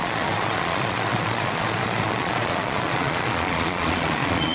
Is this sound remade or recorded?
remade